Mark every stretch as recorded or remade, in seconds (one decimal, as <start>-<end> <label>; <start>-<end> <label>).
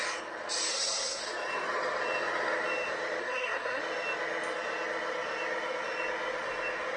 0.0-0.7 recorded; 0.7-1.2 remade; 1.2-3.2 recorded; 3.2-3.8 remade; 3.8-7.0 recorded